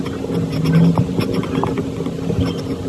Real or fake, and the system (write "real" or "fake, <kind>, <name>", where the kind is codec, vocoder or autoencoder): real